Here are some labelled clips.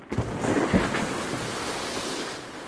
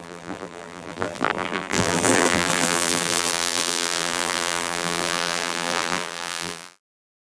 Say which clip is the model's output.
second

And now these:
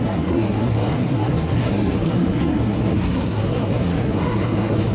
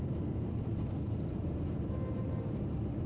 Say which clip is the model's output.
first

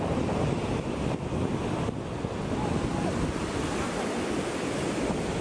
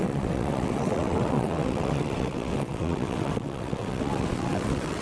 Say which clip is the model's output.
second